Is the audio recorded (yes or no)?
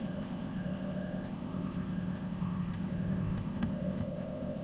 no